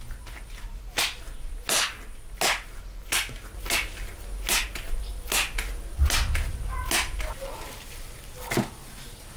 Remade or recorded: recorded